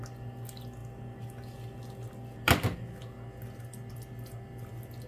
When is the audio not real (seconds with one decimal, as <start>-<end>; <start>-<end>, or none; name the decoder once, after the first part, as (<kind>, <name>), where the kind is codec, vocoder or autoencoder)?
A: none